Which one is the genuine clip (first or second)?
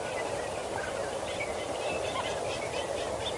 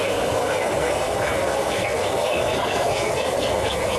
first